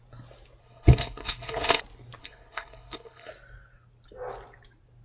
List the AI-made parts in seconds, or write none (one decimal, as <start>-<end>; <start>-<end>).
0.6-1.8; 2.2-3.3